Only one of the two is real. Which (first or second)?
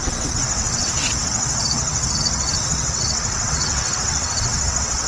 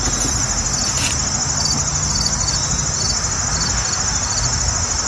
second